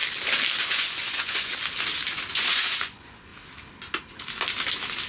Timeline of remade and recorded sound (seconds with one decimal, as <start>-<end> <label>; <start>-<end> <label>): 0.0-0.6 recorded; 0.6-1.5 remade; 1.5-2.3 recorded; 2.3-3.3 remade; 3.3-5.1 recorded